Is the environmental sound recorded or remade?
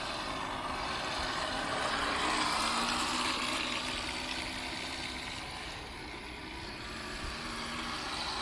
recorded